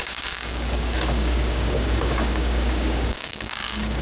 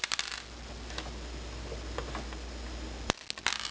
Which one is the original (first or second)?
second